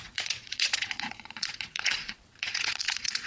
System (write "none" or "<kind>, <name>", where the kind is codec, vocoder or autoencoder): vocoder, Vocos